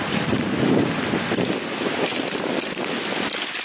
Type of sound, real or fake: fake